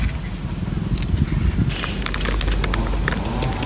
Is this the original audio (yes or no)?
yes